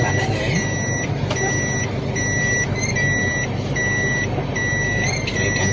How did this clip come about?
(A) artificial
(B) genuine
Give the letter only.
B